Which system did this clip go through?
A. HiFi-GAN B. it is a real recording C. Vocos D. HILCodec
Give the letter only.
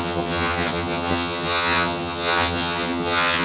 A